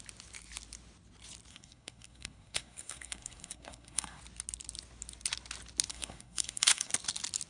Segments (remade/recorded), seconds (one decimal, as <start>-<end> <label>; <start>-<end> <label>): 0.0-1.5 recorded; 1.5-4.2 remade; 4.2-5.9 recorded; 5.9-6.9 remade; 6.9-7.5 recorded